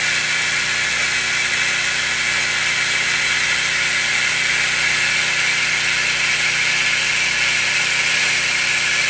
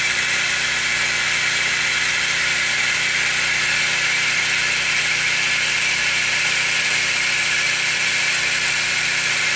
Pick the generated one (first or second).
second